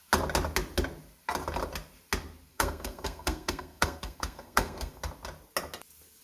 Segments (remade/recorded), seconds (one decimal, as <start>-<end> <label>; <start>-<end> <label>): 0.0-2.5 recorded; 2.5-5.0 remade; 5.0-6.2 recorded